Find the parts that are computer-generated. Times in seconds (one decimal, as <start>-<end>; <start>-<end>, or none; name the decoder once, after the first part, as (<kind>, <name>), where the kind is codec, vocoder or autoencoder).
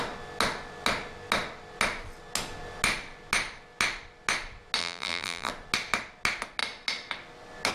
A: 4.8-5.5 (vocoder, BigVGAN v2)